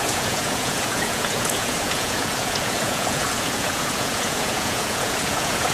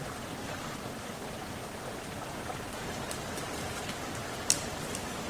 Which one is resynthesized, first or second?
first